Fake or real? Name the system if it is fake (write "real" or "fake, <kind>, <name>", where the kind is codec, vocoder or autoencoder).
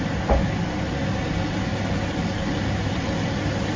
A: real